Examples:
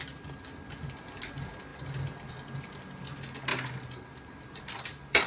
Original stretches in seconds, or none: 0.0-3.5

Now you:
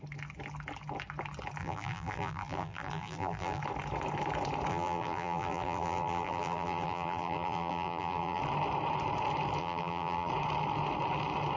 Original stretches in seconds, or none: 0.0-1.6; 3.6-4.7; 8.4-9.6; 10.3-11.6